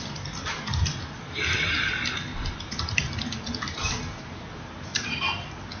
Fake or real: fake